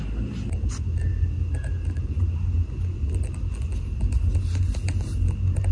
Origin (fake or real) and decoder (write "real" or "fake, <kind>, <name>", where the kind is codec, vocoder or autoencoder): real